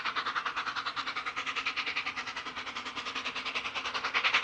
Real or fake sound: real